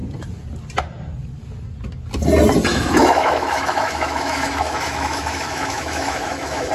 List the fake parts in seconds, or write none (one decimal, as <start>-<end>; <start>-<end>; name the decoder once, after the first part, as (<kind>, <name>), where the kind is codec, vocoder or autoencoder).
2.7-6.7 (autoencoder, DAC-VAE)